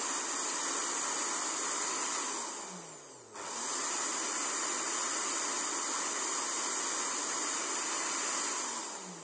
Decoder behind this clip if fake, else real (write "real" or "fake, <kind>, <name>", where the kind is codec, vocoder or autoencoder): real